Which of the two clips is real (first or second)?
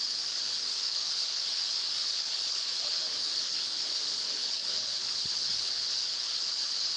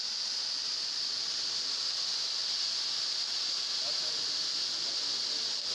second